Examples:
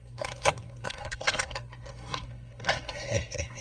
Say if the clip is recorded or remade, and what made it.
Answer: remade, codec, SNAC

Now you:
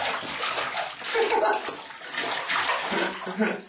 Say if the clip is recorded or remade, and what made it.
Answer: recorded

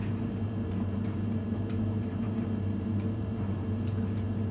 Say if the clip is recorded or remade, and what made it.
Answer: remade, vocoder, BigVGAN v2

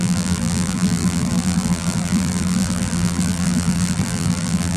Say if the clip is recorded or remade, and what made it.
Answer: remade, vocoder, BigVGAN v2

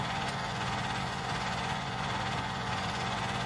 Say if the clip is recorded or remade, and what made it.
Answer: remade, vocoder, Vocos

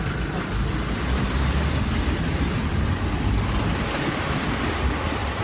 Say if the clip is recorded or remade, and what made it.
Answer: recorded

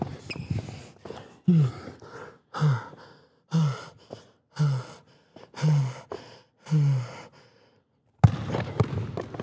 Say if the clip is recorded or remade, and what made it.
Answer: recorded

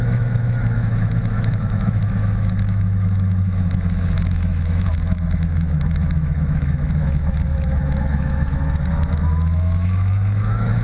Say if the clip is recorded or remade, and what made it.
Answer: remade, autoencoder, DAC-VAE